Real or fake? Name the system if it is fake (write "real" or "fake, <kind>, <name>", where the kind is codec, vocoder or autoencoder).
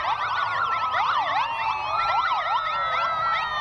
real